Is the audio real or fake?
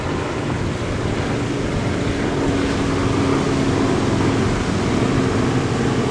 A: real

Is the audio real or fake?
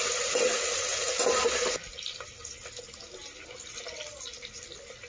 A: real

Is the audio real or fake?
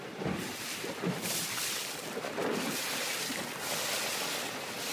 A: real